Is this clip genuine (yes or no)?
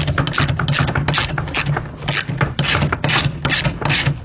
yes